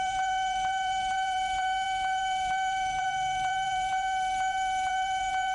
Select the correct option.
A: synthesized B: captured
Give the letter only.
A